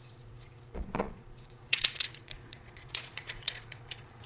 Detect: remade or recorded remade